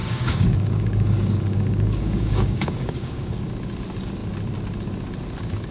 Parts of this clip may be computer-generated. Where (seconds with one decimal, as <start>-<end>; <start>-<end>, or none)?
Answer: 0.0-3.4